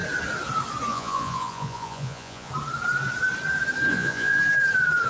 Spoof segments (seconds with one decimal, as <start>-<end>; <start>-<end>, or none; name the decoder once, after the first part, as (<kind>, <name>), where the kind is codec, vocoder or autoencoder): 0.9-2.5 (vocoder, Vocos); 3.9-4.4